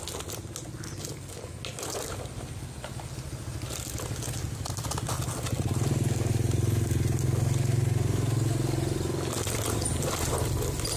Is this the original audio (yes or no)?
yes